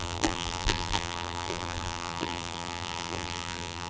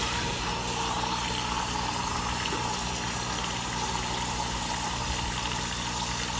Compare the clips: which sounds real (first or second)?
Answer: second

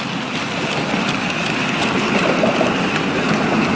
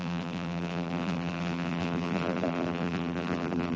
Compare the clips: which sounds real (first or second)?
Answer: first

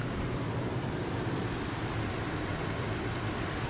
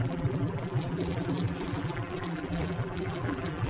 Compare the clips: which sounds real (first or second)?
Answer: first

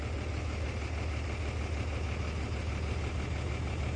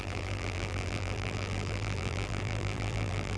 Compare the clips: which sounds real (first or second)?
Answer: first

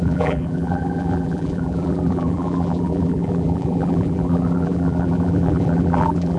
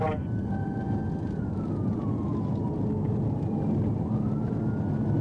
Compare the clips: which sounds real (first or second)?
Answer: second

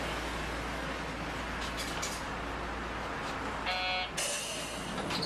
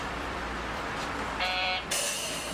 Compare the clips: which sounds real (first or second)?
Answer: first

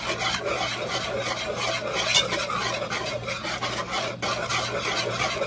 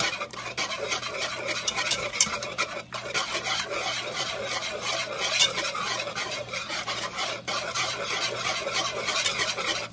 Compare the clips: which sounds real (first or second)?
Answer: first